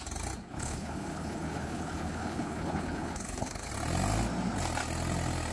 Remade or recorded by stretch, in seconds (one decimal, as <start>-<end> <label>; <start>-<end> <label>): 0.0-0.4 recorded; 0.4-3.7 remade; 3.7-5.5 recorded